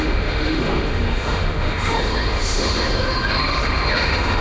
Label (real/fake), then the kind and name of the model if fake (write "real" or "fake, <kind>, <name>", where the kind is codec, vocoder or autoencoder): fake, autoencoder, DAC-VAE